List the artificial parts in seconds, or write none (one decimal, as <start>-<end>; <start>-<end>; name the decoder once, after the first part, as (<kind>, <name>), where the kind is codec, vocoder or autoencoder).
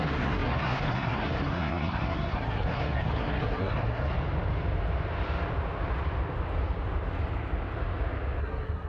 0.0-4.1 (codec, SNAC); 8.4-8.9